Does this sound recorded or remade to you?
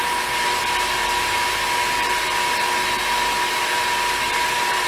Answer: recorded